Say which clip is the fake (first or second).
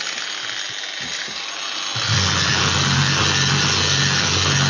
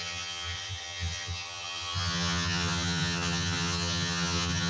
second